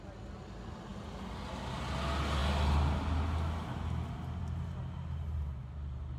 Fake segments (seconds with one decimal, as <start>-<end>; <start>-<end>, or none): none